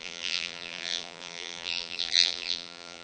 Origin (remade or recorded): remade